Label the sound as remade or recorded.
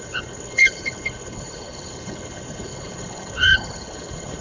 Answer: remade